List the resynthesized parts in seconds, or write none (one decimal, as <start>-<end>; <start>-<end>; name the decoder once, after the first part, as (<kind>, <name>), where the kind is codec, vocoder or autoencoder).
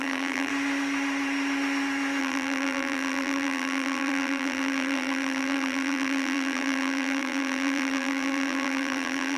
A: 0.0-0.5 (vocoder, BigVGAN v2); 2.2-9.4